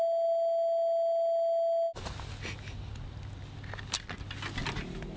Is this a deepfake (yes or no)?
no